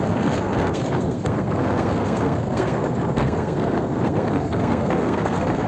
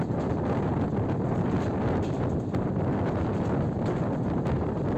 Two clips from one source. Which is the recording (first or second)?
second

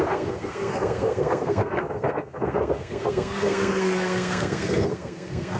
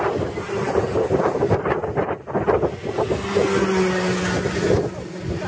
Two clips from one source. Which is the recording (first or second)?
second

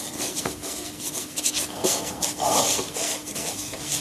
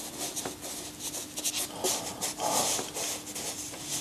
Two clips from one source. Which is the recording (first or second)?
second